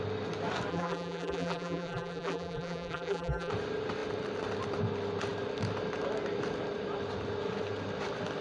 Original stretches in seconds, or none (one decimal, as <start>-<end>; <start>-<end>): 0.0-0.7; 3.5-8.4